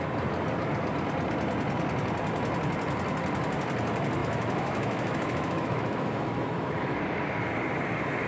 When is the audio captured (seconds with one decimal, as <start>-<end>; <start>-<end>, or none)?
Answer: 0.0-4.2; 7.0-8.3